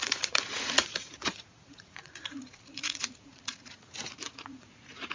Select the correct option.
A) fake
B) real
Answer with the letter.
A